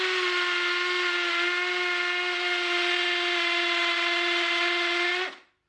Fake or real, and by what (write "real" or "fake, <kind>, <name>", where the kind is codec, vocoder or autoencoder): real